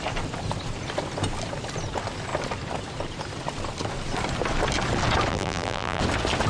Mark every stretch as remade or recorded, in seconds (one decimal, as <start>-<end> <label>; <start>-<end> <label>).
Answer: 0.0-5.3 recorded; 5.3-6.0 remade; 6.0-6.5 recorded